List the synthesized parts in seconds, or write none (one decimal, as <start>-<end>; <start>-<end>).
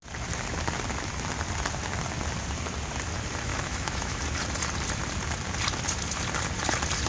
3.5-4.2